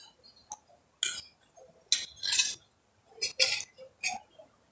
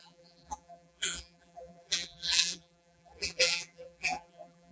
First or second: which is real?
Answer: first